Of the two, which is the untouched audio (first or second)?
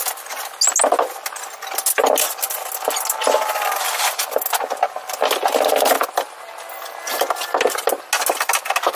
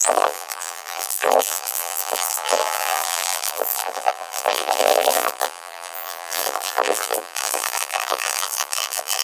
first